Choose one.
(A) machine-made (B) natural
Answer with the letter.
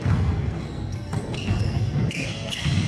A